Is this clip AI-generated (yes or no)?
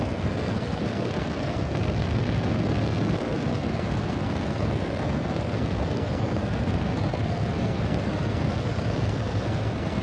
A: yes